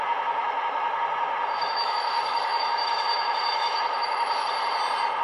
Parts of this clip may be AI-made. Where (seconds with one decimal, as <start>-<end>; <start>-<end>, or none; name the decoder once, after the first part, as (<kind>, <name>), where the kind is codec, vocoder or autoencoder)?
0.4-0.9 (autoencoder, DAC-VAE); 1.6-4.5